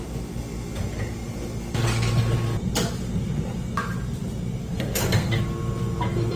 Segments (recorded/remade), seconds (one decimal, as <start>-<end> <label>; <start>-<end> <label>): 0.0-4.6 recorded; 4.6-5.4 remade; 5.4-6.4 recorded